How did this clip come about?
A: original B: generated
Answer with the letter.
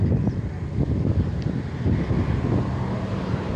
A